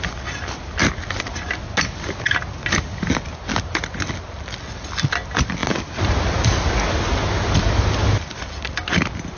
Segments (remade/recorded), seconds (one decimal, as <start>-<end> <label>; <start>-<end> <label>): 0.0-9.4 recorded